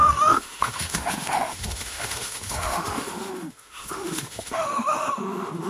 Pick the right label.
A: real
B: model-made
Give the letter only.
B